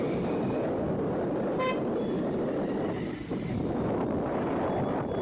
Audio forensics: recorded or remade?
recorded